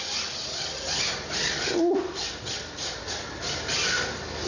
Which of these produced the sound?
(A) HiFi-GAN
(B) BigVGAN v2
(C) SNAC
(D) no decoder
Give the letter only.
D